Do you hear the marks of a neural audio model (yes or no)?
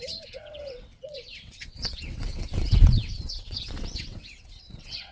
yes